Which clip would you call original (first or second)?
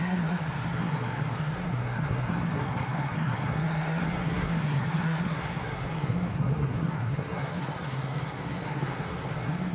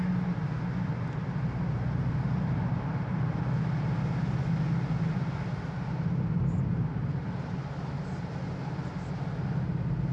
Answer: second